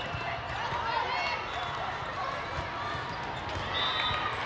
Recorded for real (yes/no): yes